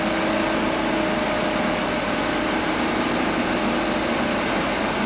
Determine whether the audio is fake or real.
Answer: real